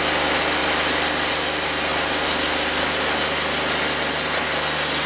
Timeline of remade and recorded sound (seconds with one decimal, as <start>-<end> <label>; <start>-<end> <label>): 0.0-5.1 recorded